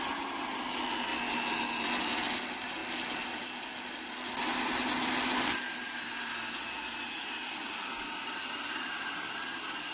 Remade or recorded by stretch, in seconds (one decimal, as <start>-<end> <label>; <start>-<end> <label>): 0.0-9.9 recorded

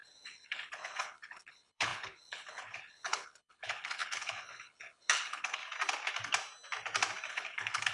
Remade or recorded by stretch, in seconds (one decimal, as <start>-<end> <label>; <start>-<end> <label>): 0.0-5.6 remade; 5.6-7.3 recorded; 7.3-7.9 remade

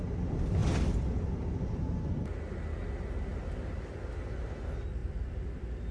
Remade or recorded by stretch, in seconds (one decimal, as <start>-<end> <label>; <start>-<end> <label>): 0.0-5.0 recorded; 5.0-5.9 remade

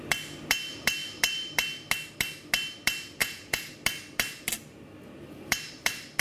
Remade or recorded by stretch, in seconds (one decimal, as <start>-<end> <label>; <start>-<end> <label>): 0.0-3.2 recorded; 3.2-3.7 remade; 3.7-6.2 recorded

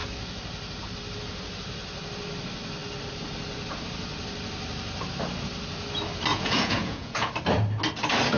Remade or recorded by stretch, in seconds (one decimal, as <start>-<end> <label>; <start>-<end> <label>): 0.0-6.3 recorded; 6.3-7.3 remade; 7.3-8.4 recorded

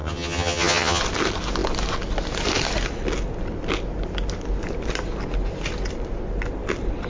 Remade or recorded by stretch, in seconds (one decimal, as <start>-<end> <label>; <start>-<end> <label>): 0.0-1.0 remade; 1.0-7.1 recorded

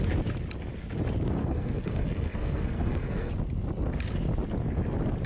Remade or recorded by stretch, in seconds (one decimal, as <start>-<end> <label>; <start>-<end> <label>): 0.0-1.4 recorded; 1.4-3.3 remade; 3.3-5.3 recorded

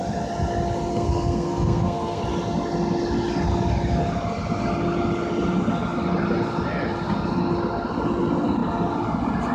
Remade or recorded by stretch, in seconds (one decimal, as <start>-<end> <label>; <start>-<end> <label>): 0.0-0.9 recorded; 0.9-2.2 remade; 2.2-9.5 recorded